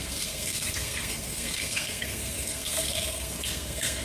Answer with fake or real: fake